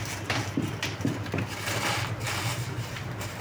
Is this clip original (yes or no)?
yes